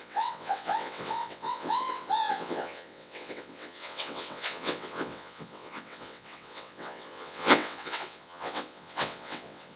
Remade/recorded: remade